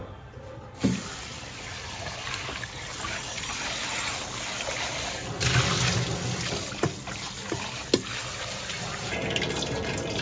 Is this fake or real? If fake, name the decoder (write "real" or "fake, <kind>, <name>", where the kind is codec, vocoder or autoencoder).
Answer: real